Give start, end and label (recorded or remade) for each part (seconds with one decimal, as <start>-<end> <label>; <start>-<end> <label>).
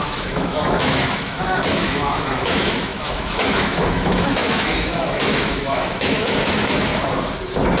0.0-6.9 remade; 6.9-7.8 recorded